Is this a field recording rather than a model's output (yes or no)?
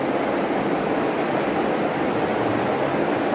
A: yes